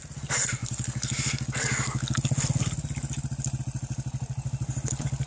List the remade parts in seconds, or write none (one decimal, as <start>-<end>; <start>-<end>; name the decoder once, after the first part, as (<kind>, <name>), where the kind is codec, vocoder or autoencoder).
none